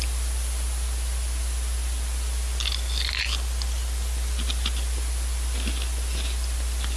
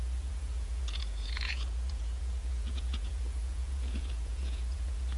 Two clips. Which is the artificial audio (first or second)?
second